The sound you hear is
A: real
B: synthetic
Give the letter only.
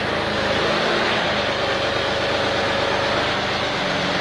A